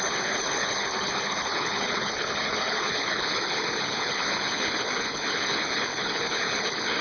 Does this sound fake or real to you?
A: fake